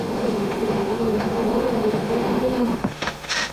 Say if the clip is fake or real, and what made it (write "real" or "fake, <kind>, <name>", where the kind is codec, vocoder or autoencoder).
fake, autoencoder, DAC-VAE